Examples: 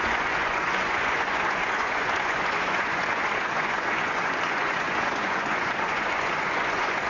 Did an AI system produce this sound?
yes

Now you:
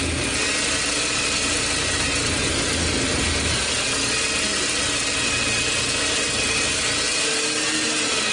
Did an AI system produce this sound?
no